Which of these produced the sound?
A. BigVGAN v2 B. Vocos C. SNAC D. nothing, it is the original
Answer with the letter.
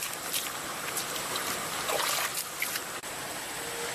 D